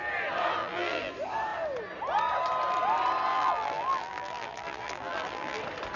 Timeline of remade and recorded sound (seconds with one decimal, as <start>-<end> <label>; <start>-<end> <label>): 0.0-0.6 recorded; 0.6-1.1 remade; 1.1-3.3 recorded; 3.3-5.6 remade; 5.6-6.0 recorded